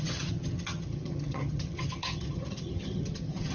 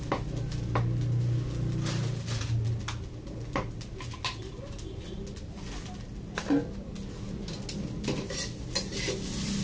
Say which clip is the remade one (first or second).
first